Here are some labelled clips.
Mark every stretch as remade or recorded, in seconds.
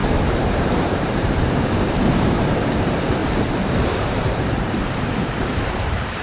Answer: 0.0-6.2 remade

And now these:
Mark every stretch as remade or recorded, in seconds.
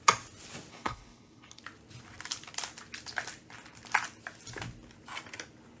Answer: 0.0-0.7 recorded; 0.7-1.6 remade; 1.6-5.8 recorded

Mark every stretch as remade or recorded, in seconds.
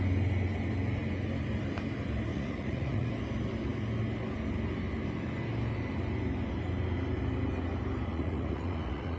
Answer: 0.0-2.3 recorded; 2.3-3.1 remade; 3.1-8.1 recorded; 8.1-9.2 remade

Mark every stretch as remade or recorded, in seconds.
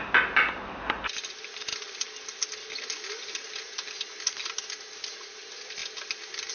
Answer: 0.0-6.5 recorded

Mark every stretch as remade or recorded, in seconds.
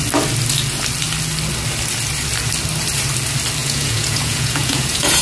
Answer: 0.0-3.6 recorded; 3.6-5.2 remade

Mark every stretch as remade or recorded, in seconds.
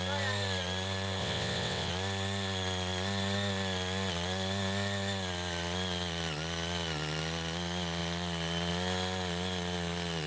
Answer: 0.0-1.2 recorded; 1.2-1.9 remade; 1.9-10.3 recorded